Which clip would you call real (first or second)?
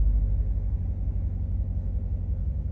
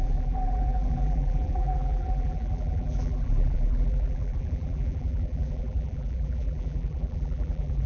first